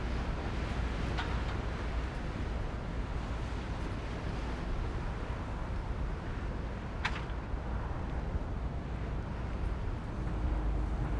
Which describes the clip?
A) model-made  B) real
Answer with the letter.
B